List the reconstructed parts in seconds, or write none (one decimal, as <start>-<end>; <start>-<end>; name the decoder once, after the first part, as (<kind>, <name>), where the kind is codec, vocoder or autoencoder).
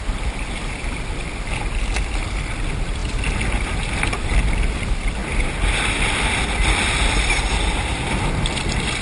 none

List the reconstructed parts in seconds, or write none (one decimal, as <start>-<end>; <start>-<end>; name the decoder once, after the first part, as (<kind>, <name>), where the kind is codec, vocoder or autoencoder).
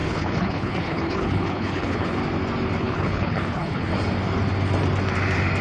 0.0-2.2 (codec, HILCodec); 2.8-3.9